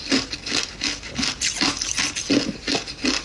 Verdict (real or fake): real